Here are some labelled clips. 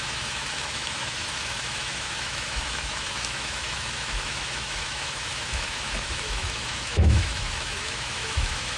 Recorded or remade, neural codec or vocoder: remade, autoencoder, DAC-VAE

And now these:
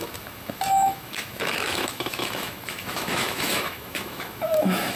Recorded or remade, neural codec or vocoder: remade, autoencoder, DAC-VAE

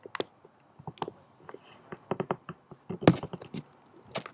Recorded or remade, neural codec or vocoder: recorded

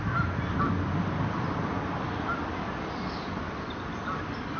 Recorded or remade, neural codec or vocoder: recorded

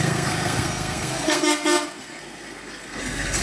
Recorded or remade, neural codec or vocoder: remade, codec, SNAC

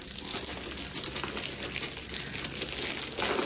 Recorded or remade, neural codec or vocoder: recorded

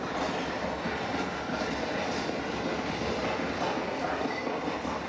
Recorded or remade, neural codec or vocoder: recorded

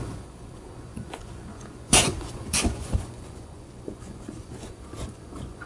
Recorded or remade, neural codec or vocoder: remade, vocoder, Vocos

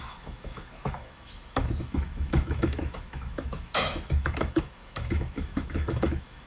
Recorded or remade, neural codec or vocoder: remade, autoencoder, DAC-VAE